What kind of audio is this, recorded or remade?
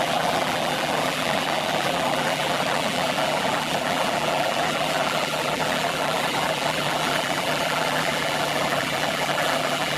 remade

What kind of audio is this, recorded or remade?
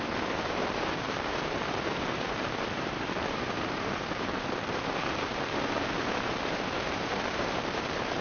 remade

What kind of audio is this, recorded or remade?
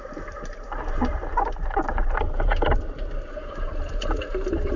remade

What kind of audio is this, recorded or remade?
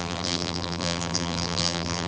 remade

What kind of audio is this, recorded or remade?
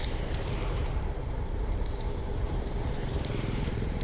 remade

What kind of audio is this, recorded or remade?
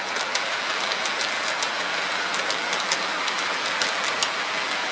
remade